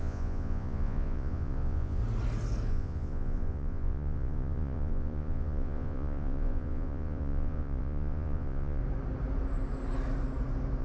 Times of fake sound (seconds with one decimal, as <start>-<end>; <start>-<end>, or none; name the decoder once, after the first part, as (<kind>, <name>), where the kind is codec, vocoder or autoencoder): 0.0-2.0 (vocoder, Vocos); 2.7-8.8